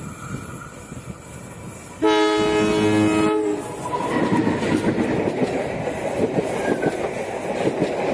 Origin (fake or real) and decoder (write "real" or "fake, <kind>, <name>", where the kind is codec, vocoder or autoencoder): real